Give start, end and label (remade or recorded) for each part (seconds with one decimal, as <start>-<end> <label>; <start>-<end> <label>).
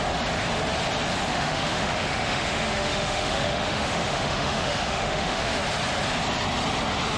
0.0-1.3 recorded; 1.3-5.6 remade; 5.6-7.2 recorded